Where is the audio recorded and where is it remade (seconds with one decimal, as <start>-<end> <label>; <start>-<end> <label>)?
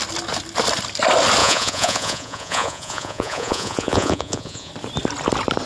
0.0-1.4 recorded; 1.4-4.7 remade; 4.7-5.7 recorded